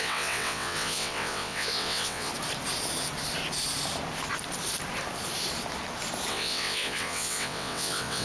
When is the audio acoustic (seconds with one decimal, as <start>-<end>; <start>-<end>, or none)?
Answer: 2.3-6.3